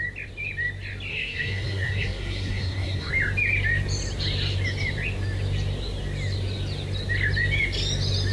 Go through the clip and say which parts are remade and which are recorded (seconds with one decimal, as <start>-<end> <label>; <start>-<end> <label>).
0.0-1.1 recorded; 1.1-3.1 remade; 3.1-8.3 recorded